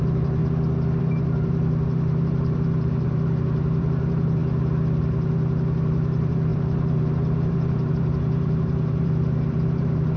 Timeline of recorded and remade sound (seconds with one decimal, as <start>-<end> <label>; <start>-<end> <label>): 0.0-0.4 remade; 0.4-1.0 recorded; 1.0-4.4 remade; 4.4-5.0 recorded; 5.0-10.2 remade